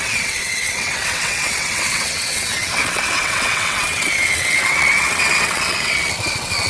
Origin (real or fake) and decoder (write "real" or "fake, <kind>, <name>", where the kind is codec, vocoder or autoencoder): fake, vocoder, WaveNeXt